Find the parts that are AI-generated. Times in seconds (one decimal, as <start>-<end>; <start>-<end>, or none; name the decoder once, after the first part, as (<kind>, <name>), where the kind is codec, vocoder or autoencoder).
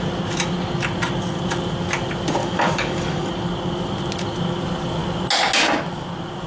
2.4-3.3 (codec, DAC)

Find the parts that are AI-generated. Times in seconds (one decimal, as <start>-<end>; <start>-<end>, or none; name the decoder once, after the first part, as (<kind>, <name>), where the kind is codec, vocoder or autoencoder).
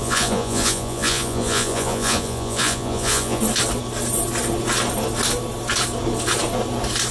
0.0-3.4 (vocoder, Vocos)